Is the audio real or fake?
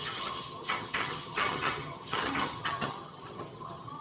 fake